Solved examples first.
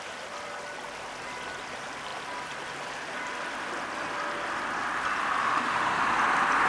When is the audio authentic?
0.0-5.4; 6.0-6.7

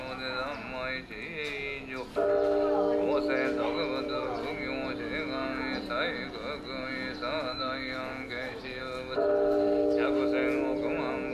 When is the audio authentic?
0.0-7.5; 8.8-11.3

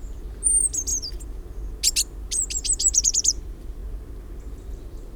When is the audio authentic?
0.0-5.2

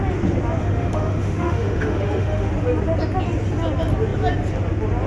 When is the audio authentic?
0.0-0.6; 2.5-5.1